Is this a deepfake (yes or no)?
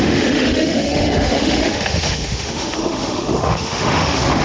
yes